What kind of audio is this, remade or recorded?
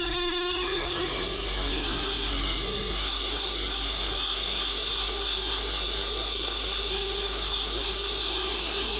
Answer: remade